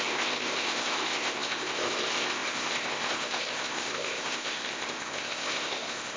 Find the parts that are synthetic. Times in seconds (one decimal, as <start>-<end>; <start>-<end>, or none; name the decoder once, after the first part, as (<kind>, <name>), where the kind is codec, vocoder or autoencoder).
0.0-6.2 (codec, ZipCodec)